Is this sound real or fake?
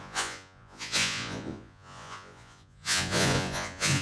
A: fake